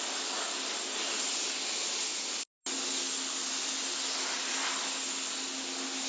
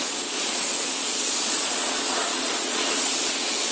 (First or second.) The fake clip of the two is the second